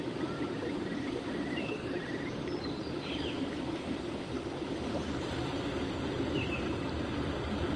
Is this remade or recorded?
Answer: remade